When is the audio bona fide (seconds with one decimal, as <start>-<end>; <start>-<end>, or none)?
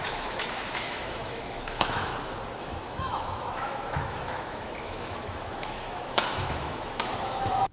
2.1-2.6